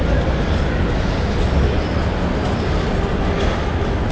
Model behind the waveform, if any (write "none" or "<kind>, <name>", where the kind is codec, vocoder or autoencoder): none